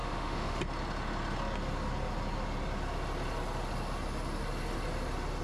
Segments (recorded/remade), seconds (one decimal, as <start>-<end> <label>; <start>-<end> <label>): 0.0-0.6 remade; 0.6-5.4 recorded